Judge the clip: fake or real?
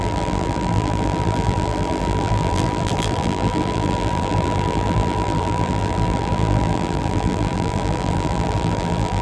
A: fake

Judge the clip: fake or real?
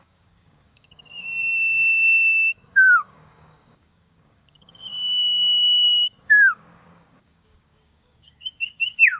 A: fake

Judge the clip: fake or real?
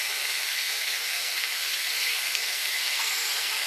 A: fake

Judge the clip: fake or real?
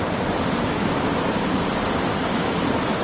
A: real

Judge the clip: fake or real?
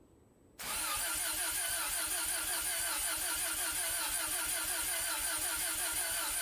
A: real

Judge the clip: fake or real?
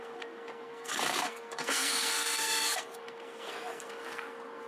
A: fake